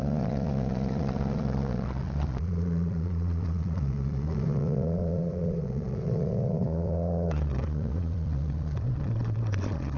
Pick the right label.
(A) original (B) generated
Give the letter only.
B